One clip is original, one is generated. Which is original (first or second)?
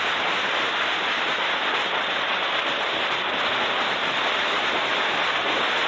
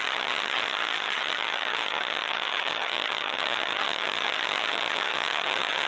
first